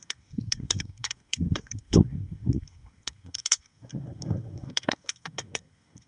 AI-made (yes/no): yes